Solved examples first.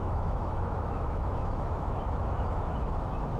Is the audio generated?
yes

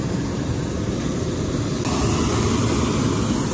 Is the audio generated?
no